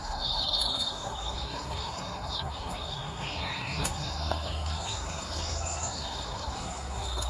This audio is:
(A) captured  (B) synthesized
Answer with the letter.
B